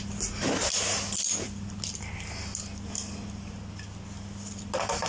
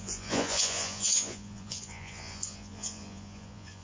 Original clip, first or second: first